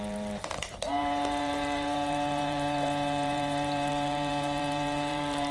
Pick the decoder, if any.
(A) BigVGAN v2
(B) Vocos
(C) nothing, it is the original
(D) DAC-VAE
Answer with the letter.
A